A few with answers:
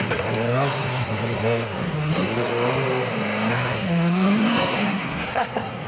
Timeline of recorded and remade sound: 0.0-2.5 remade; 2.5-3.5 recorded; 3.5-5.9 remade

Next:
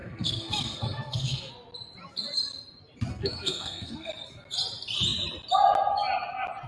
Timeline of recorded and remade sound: 0.0-1.5 remade; 1.5-3.1 recorded; 3.1-4.1 remade; 4.1-6.7 recorded